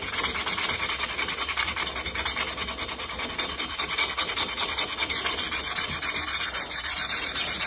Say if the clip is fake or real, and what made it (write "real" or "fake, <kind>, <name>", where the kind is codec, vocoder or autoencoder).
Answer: real